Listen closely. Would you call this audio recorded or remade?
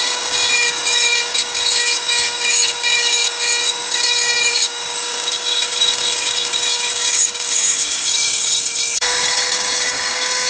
remade